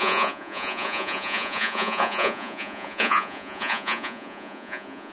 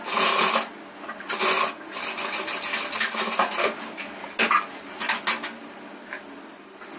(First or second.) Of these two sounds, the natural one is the second